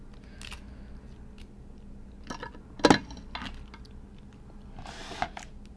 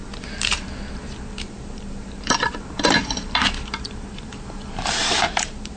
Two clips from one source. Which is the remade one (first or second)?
second